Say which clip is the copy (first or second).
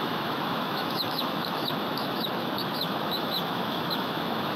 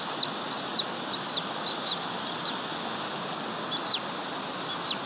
first